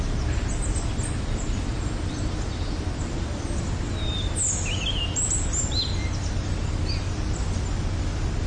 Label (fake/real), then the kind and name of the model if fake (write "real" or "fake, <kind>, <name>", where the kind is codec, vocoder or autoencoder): real